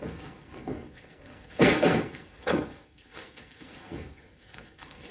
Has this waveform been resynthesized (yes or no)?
yes